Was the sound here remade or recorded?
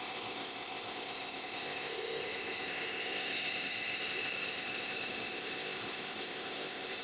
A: remade